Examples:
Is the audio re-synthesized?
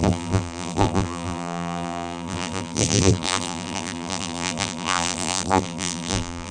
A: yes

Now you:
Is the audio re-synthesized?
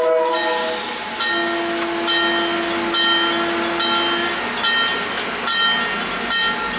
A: no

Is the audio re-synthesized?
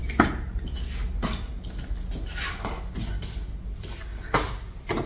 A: no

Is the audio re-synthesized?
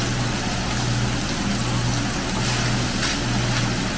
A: no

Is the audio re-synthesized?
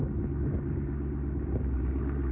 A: no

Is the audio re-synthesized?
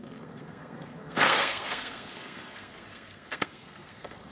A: yes